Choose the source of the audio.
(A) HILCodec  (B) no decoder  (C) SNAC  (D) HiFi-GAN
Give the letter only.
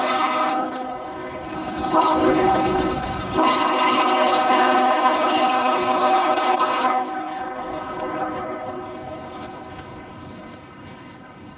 A